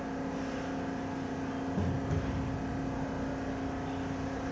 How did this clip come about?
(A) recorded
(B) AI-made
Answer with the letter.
A